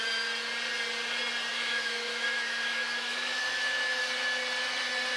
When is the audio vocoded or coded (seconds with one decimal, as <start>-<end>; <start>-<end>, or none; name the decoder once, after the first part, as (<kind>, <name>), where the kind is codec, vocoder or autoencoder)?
1.5-4.0 (autoencoder, DAC-VAE)